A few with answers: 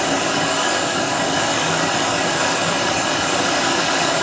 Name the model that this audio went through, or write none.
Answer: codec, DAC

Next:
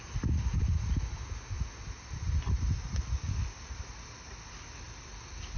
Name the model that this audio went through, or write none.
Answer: none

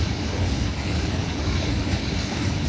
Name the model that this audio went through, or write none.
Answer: codec, DAC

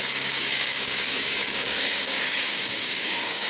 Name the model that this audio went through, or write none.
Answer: codec, DAC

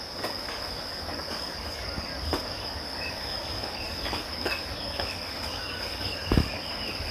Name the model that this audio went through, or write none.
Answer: codec, DAC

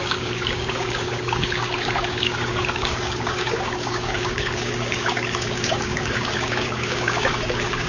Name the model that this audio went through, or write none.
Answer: codec, DAC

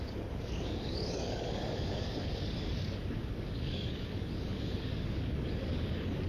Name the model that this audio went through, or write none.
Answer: codec, DAC